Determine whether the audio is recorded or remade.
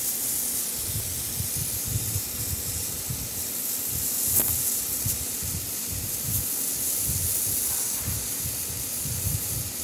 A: remade